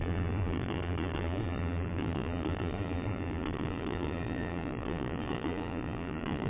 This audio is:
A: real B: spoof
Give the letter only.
B